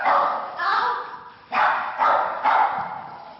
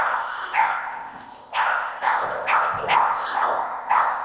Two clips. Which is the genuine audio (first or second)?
first